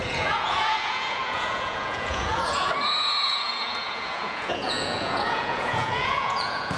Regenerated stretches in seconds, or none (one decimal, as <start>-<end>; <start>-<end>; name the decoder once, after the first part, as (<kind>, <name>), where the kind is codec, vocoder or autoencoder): 0.0-6.8 (vocoder, Vocos)